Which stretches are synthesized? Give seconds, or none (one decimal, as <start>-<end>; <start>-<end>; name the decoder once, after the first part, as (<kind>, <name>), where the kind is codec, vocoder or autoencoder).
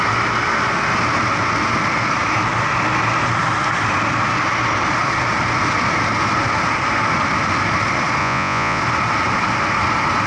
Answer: 8.2-8.8 (vocoder, Vocos)